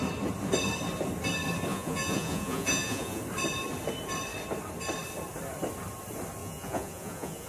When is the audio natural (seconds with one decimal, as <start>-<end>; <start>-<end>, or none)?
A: 0.0-1.7; 3.2-6.4